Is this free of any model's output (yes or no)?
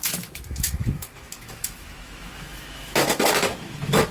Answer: no